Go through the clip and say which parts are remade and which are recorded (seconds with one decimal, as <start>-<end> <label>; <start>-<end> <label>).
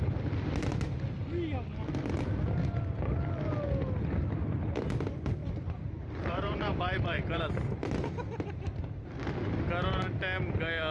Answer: 0.0-5.4 recorded; 5.4-7.4 remade; 7.4-10.9 recorded